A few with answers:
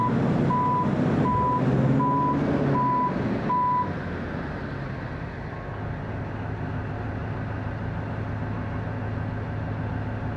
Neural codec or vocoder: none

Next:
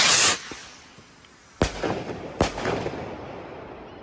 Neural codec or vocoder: none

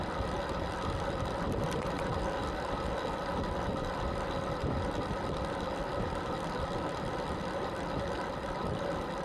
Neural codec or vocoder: vocoder, BigVGAN v2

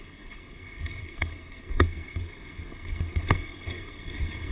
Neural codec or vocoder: codec, SNAC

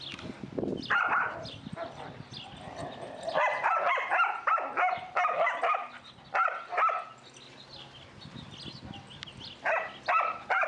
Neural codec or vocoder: none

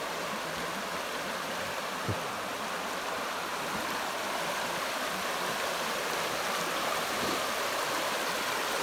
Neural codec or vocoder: vocoder, BigVGAN v2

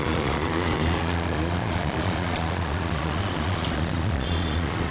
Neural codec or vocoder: vocoder, Vocos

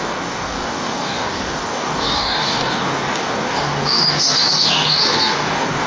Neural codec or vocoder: codec, DAC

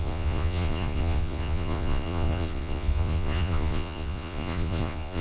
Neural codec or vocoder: vocoder, Vocos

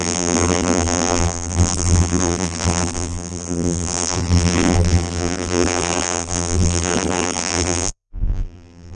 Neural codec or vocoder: vocoder, BigVGAN v2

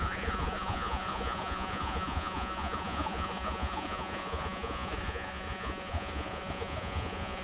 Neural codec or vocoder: vocoder, Vocos